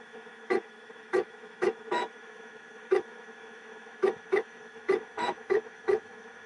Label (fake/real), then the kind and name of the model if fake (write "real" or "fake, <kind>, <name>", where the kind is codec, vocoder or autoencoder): fake, autoencoder, DAC-VAE